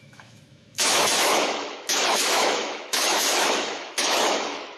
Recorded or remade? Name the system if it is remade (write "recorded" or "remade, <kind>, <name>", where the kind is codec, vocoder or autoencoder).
remade, autoencoder, DAC-VAE